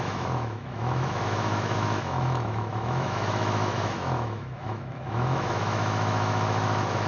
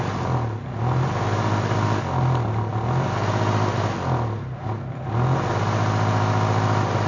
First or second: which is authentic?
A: second